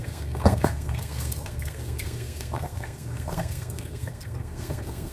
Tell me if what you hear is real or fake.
fake